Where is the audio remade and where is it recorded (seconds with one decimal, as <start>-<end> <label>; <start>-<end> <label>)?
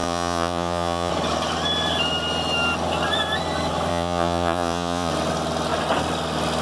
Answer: 0.0-1.1 remade; 1.1-3.9 recorded; 3.9-5.1 remade; 5.1-6.6 recorded